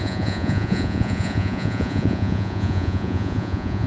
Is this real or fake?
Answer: fake